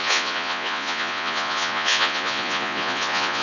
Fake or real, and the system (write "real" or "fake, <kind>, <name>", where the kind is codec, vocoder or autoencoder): fake, vocoder, Vocos